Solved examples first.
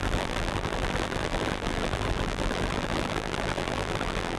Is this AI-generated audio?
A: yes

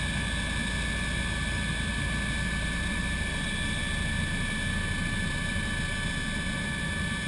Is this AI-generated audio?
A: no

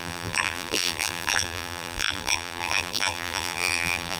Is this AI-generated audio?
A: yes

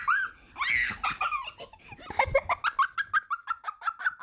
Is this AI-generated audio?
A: no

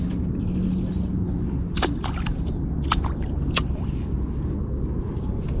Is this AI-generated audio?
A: no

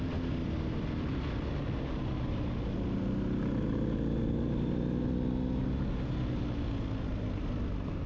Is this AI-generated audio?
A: no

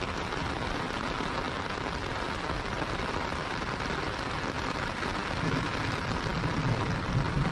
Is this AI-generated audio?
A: no